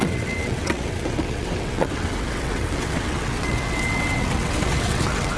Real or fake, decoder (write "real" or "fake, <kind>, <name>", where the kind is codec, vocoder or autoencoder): fake, vocoder, WaveNeXt